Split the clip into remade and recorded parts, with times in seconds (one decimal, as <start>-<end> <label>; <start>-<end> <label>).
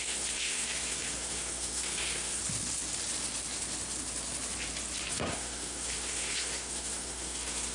0.0-2.4 remade; 2.4-5.1 recorded; 5.1-7.7 remade